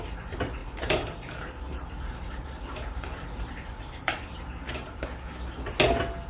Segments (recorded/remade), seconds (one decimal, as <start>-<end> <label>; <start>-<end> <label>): 0.0-0.6 recorded; 0.6-4.4 remade; 4.4-6.3 recorded